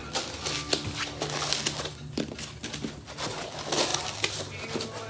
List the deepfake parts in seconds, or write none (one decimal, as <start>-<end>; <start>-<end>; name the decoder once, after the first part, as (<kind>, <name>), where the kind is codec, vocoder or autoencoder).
none